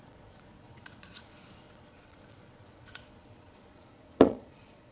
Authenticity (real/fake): fake